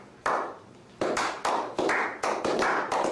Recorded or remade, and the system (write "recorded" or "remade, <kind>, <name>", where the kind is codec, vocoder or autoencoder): recorded